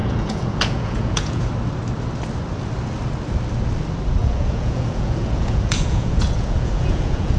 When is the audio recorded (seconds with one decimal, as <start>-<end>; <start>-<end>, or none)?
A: 1.5-4.2